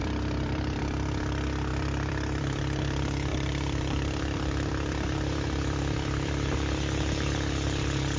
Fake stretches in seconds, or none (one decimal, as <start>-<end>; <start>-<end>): 0.0-1.2; 1.7-2.6; 3.3-6.3